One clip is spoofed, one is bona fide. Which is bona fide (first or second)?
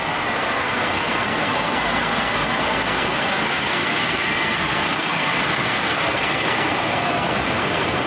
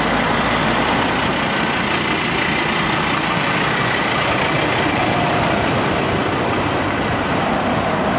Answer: second